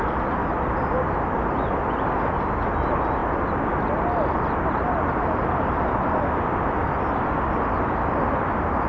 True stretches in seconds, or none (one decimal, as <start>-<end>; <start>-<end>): 0.0-8.9